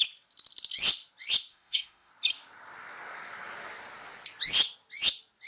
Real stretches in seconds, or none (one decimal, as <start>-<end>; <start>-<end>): 0.0-1.5; 2.1-5.5